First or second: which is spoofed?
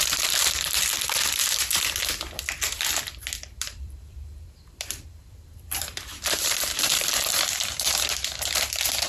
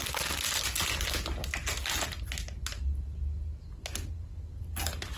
first